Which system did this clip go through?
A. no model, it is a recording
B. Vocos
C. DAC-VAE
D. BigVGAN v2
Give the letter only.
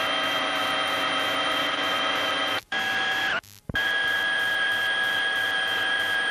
D